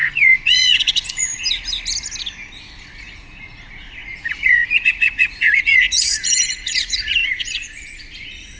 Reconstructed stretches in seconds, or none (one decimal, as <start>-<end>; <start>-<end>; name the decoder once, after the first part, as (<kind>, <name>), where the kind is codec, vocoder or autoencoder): 0.0-1.3 (vocoder, Vocos); 3.0-8.6